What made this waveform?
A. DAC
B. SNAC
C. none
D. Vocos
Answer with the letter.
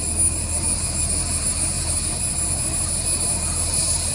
C